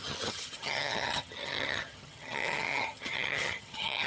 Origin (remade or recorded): remade